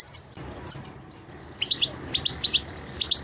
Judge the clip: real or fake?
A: real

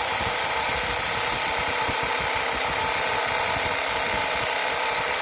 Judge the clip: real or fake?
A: real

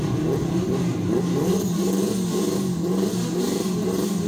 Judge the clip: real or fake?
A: real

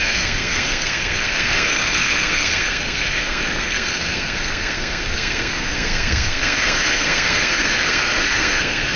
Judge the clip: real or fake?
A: fake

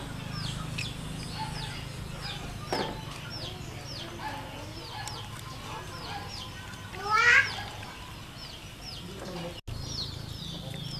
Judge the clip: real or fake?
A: real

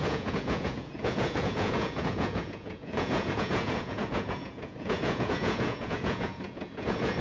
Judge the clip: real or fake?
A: fake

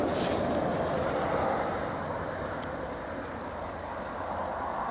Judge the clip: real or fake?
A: real